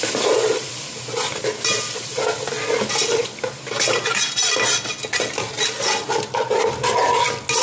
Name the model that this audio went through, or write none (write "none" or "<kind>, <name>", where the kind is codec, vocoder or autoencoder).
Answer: none